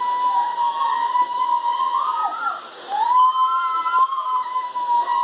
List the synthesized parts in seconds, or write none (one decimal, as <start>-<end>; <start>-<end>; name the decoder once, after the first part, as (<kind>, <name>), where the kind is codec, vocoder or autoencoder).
0.0-2.2 (autoencoder, DAC-VAE); 4.0-5.2